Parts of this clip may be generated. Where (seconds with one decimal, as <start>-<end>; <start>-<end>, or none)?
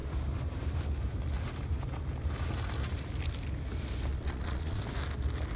4.1-4.8